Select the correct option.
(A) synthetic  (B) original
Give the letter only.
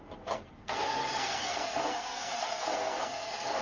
A